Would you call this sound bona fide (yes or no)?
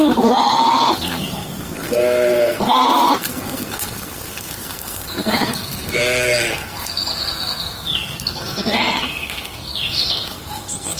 no